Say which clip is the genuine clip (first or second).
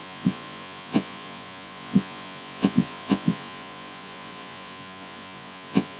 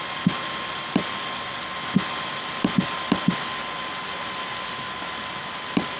second